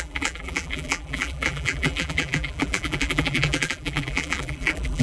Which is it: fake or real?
fake